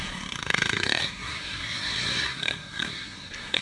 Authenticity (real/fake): fake